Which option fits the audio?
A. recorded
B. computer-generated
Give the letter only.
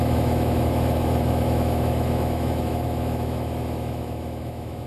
B